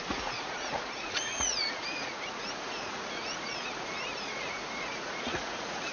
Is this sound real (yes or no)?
no